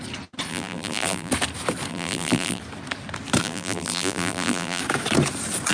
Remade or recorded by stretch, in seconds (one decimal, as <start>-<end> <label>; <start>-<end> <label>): 0.0-0.5 recorded; 0.5-1.3 remade; 1.3-1.9 recorded; 1.9-2.6 remade; 2.6-3.4 recorded; 3.4-4.8 remade; 4.8-5.7 recorded